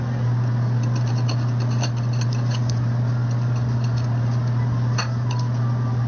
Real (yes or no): yes